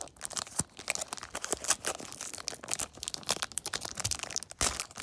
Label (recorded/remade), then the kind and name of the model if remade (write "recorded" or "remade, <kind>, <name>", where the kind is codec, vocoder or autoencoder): recorded